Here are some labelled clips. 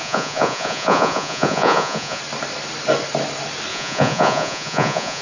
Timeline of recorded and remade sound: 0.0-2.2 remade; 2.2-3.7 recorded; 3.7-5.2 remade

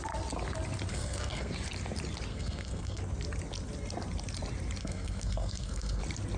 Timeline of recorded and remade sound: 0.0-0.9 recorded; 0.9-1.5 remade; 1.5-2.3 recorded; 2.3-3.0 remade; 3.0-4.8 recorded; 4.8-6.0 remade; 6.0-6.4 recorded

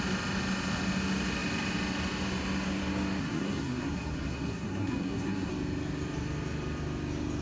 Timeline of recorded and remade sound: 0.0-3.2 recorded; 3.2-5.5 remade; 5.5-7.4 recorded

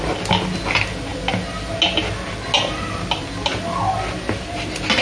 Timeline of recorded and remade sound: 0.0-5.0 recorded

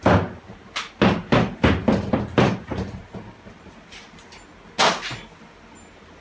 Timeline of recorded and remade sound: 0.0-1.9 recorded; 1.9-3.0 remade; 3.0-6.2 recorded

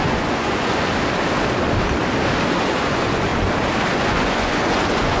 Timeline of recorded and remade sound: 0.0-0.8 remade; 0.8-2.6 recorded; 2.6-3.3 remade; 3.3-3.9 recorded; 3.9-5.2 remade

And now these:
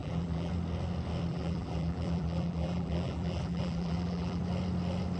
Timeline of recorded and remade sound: 0.0-0.5 remade; 0.5-1.3 recorded; 1.3-4.4 remade; 4.4-5.2 recorded

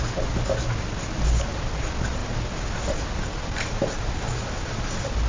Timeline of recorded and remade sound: 0.0-5.3 recorded